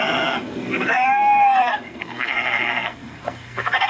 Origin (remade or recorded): remade